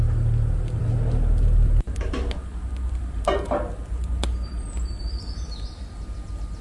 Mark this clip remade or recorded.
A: recorded